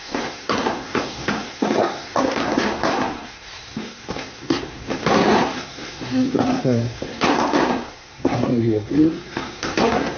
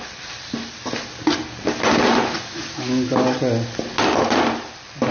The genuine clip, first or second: second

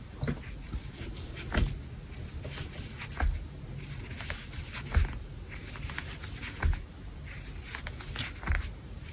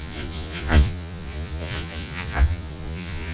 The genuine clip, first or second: first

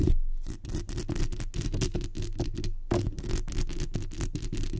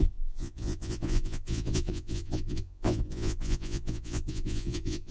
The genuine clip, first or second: first